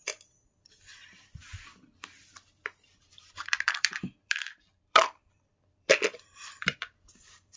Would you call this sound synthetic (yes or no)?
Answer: yes